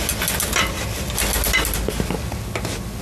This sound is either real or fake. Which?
real